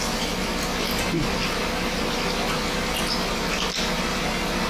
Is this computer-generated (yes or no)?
no